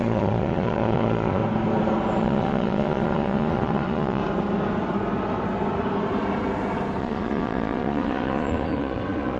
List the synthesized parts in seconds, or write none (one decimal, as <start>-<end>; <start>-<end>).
0.0-1.4; 2.2-4.2; 7.0-9.4